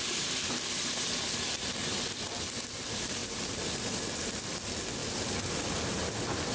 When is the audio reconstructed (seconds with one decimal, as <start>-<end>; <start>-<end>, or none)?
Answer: none